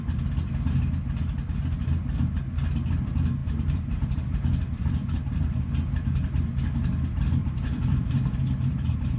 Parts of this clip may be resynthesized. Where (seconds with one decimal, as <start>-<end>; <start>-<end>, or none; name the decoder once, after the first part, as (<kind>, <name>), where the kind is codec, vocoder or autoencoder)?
3.4-5.7 (vocoder, BigVGAN v2); 7.4-9.2